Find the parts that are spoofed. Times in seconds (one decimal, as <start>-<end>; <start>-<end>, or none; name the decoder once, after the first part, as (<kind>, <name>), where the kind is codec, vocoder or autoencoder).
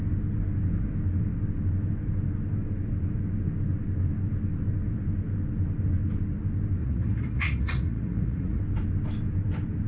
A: 6.8-8.6 (vocoder, Vocos)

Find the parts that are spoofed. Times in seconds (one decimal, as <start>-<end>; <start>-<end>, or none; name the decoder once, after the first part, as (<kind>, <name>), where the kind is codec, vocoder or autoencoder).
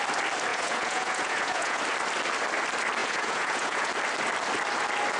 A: 0.5-1.8 (vocoder, Vocos); 3.0-3.9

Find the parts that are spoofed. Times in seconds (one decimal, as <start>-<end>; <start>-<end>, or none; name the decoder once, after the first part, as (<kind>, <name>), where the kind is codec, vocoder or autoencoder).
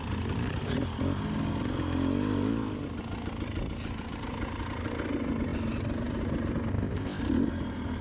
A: 6.7-7.2 (codec, ZipCodec)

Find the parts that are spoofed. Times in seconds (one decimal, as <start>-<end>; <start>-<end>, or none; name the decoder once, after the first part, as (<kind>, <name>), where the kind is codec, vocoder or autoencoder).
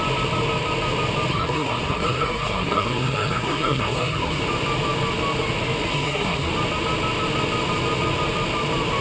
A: 1.3-4.4 (codec, SNAC); 5.9-6.5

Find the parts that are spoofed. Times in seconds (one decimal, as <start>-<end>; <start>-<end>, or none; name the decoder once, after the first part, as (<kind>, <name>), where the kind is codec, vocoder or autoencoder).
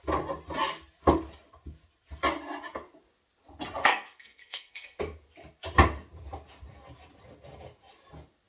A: 3.8-5.0 (codec, SNAC)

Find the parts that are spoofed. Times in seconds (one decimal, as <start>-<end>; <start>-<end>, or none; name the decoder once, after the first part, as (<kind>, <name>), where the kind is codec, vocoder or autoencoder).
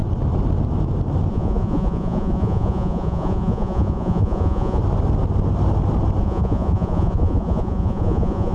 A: 1.3-4.8 (vocoder, Vocos); 6.2-8.5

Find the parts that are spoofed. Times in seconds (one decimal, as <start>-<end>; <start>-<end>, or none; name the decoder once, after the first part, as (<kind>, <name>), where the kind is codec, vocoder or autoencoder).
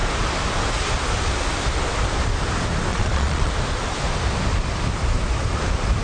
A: 2.9-3.5 (vocoder, Vocos)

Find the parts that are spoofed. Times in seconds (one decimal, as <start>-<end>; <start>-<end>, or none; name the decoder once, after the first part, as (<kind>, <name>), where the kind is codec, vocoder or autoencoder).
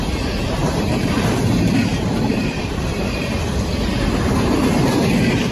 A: 0.6-1.4 (vocoder, BigVGAN v2); 1.9-3.3